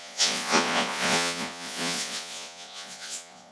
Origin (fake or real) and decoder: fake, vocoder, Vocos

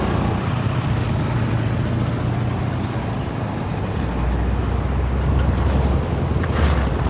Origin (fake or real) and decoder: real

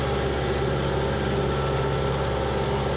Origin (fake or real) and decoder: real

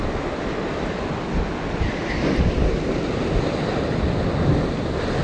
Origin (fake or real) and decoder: real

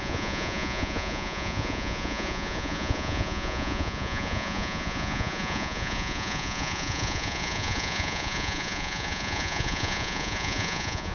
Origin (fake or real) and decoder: fake, vocoder, Vocos